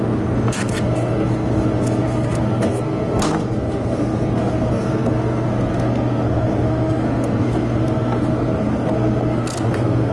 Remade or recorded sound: remade